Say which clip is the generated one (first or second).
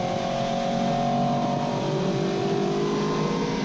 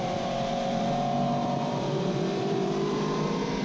second